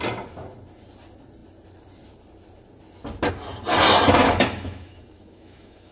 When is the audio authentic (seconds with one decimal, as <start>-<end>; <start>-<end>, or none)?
0.0-4.2